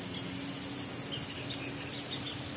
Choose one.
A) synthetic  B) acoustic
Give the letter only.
B